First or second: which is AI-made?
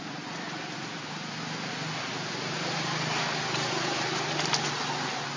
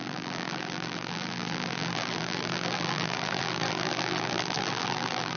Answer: second